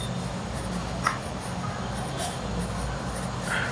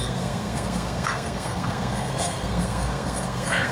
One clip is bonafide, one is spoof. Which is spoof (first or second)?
second